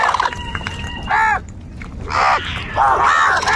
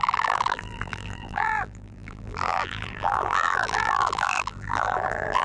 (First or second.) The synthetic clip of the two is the second